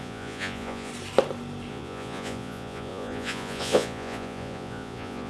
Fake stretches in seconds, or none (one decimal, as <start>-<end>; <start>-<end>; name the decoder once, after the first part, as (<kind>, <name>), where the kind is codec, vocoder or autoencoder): 0.0-0.9 (vocoder, Vocos); 1.7-5.3